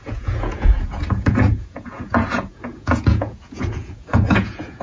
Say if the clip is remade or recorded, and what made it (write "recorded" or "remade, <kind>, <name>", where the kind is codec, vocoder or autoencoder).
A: remade, vocoder, Vocos